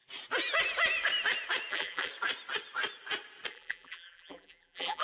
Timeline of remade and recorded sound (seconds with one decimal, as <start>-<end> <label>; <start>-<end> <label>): 0.0-1.7 recorded; 1.7-2.1 remade; 2.1-3.5 recorded; 3.5-5.0 remade